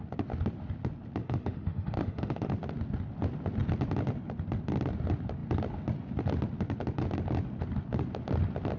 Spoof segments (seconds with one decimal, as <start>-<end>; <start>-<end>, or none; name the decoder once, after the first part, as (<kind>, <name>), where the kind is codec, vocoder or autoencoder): 1.2-2.5 (autoencoder, DAC-VAE)